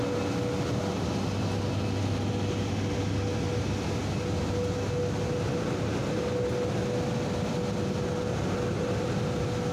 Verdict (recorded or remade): recorded